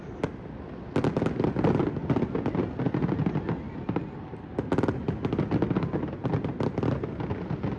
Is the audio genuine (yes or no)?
yes